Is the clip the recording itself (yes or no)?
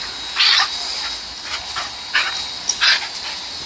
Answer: yes